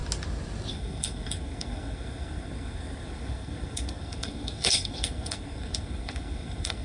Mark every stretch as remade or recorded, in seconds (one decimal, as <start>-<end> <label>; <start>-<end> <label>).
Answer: 0.0-0.7 recorded; 0.7-6.8 remade